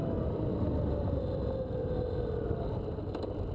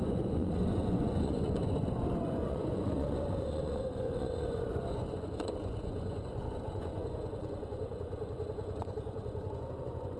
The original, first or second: first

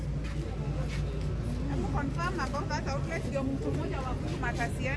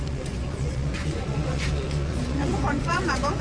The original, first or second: first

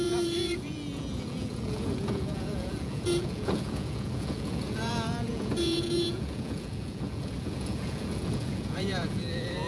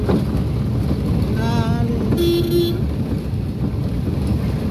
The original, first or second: second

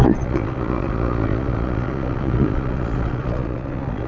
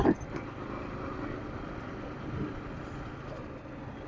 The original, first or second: second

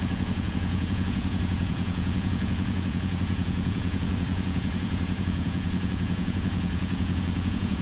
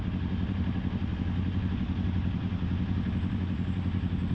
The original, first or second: second